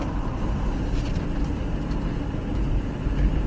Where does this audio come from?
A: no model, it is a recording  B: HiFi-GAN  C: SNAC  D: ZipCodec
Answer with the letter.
A